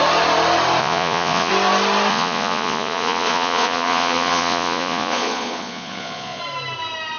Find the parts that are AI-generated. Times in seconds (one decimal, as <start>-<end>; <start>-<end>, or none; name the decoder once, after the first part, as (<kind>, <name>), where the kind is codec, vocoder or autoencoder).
0.8-1.5 (vocoder, Vocos); 2.1-6.4